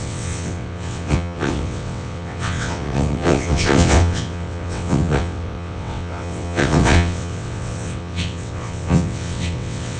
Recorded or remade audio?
remade